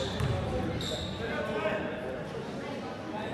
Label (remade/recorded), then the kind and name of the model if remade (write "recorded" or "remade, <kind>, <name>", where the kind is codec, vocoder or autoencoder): recorded